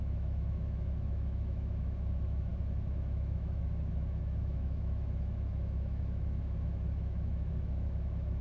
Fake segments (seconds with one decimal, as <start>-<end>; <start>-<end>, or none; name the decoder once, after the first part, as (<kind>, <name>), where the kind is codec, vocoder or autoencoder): 0.0-8.4 (autoencoder, DAC-VAE)